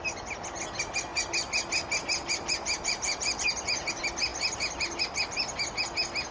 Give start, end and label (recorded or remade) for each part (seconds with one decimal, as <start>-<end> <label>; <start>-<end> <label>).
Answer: 0.0-6.3 recorded